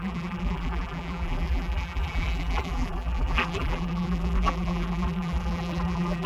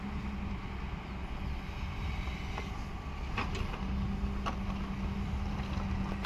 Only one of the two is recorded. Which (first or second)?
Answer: second